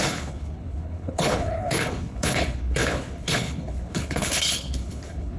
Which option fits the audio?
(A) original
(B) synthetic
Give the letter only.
B